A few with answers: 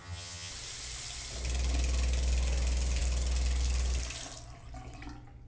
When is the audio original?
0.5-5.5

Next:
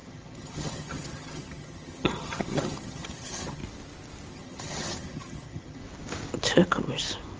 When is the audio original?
3.6-4.3; 5.8-7.4

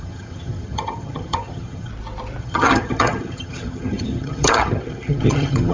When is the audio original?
1.9-2.4